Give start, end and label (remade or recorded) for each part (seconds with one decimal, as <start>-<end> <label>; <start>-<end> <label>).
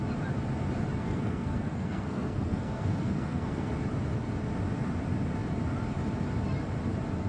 0.0-1.0 recorded; 1.0-3.7 remade; 3.7-7.3 recorded